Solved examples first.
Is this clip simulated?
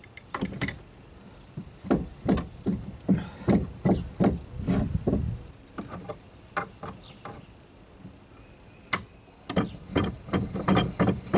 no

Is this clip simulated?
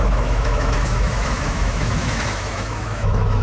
yes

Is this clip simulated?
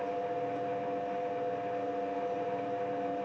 no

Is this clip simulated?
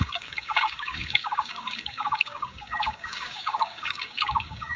yes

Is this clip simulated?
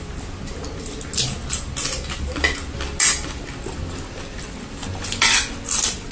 no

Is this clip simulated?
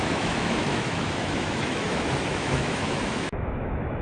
yes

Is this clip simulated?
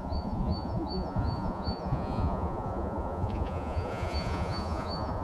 yes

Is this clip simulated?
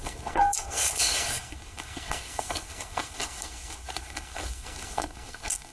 yes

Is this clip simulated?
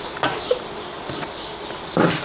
no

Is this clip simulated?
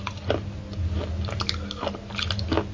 no